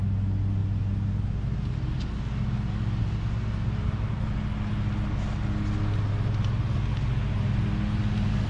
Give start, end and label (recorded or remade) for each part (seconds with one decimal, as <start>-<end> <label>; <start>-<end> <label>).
0.0-8.5 recorded